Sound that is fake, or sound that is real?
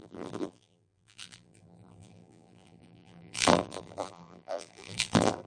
fake